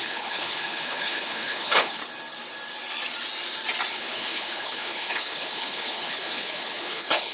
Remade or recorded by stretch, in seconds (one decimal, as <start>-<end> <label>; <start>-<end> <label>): 0.0-2.0 remade; 2.0-3.9 recorded; 3.9-7.3 remade